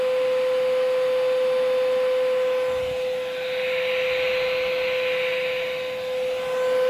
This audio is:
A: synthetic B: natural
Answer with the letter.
B